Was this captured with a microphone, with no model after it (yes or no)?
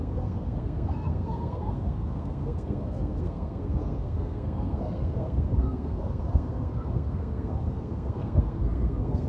no